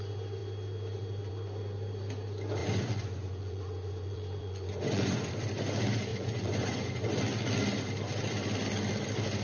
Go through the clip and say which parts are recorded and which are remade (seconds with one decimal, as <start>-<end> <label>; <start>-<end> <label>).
0.0-2.6 recorded; 2.6-5.3 remade; 5.3-6.1 recorded; 6.1-7.2 remade; 7.2-9.4 recorded